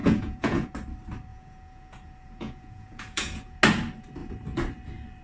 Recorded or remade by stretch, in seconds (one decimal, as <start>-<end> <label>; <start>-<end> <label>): 0.0-0.7 remade; 0.7-1.3 recorded; 1.3-3.6 remade; 3.6-5.2 recorded